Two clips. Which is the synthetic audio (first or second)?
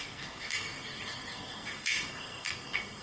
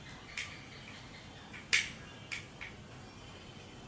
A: first